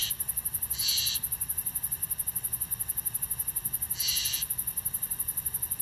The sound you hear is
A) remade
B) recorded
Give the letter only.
B